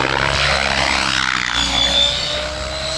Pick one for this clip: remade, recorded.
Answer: recorded